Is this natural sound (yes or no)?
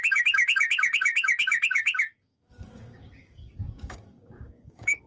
no